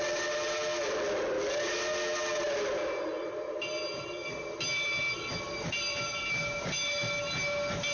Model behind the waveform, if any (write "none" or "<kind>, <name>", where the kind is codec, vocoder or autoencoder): none